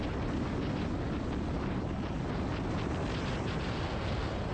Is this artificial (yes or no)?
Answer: no